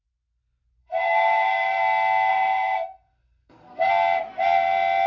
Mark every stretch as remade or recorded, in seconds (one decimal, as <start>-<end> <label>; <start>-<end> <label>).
0.0-0.8 recorded; 0.8-1.8 remade; 1.8-2.3 recorded; 2.3-3.9 remade; 3.9-5.1 recorded